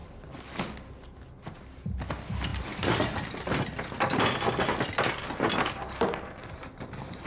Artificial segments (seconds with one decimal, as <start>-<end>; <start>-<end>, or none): none

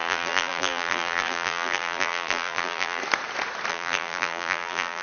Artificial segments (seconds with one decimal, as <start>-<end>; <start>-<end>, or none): 0.0-3.0; 3.7-5.0

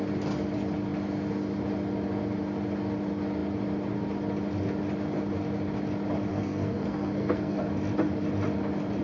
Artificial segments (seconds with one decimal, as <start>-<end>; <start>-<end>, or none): 6.3-7.7

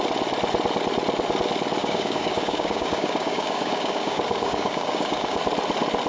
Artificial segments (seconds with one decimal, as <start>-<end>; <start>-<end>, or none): 1.8-5.4

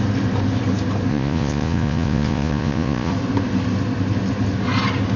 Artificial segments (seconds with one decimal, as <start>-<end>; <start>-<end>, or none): 1.1-3.1

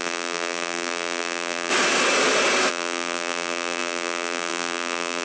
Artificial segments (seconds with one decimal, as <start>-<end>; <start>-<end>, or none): 0.0-1.7; 2.7-5.2